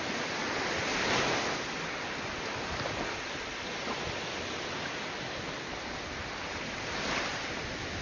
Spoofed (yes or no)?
no